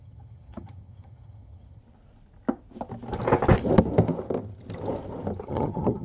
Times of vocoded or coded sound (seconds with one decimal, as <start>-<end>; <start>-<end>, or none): 0.0-1.8; 5.4-6.0